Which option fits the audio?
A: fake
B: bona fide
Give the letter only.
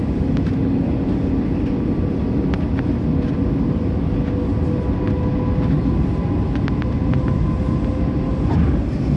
B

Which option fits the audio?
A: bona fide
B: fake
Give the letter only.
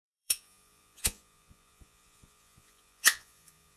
B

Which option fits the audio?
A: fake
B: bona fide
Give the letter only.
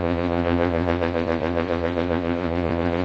A